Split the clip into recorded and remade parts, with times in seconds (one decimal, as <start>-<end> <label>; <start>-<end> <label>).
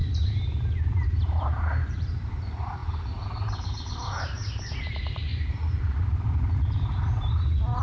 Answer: 0.0-7.8 remade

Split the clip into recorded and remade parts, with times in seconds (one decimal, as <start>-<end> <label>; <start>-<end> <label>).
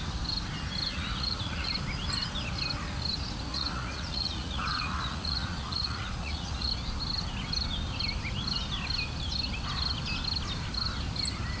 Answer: 0.0-0.9 recorded; 0.9-1.7 remade; 1.7-3.5 recorded; 3.5-6.7 remade; 6.7-11.6 recorded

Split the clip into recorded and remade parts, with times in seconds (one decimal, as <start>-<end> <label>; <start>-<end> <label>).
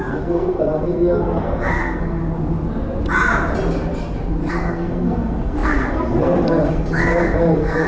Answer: 0.0-2.2 remade; 2.2-4.5 recorded; 4.5-7.9 remade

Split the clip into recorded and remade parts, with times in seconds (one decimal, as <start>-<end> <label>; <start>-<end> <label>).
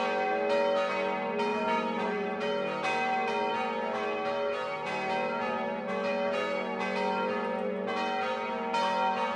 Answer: 0.0-1.5 recorded; 1.5-2.5 remade; 2.5-9.4 recorded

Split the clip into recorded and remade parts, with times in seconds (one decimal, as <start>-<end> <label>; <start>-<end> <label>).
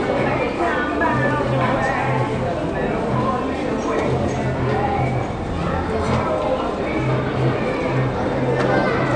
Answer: 0.0-9.2 recorded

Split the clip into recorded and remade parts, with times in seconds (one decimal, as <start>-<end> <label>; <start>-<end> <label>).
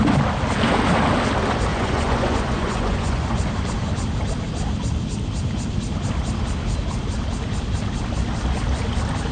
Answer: 0.0-1.7 recorded; 1.7-3.5 remade; 3.5-9.3 recorded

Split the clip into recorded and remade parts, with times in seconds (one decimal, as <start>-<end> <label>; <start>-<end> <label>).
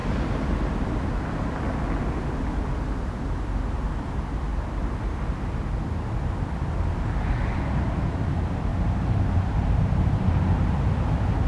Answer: 0.0-8.7 recorded; 8.7-10.2 remade; 10.2-11.5 recorded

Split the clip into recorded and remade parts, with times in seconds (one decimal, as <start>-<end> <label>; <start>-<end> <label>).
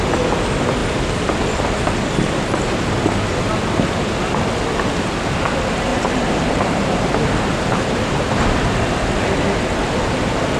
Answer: 0.0-5.9 recorded; 5.9-8.7 remade; 8.7-10.6 recorded